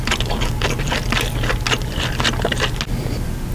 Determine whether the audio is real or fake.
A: real